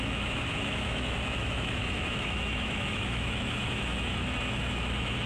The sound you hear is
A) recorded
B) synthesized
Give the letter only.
B